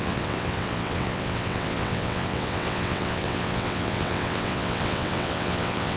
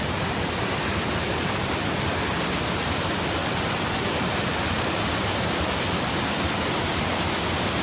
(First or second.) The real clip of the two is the second